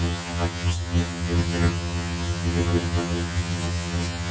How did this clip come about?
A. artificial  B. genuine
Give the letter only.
A